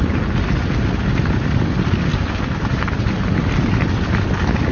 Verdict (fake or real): real